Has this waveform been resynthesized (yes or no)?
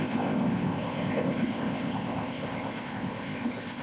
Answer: yes